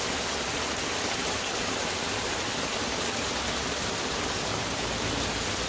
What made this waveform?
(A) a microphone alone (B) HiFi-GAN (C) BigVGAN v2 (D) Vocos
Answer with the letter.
A